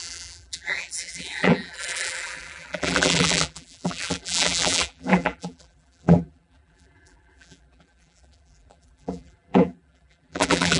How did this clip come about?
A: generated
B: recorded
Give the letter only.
A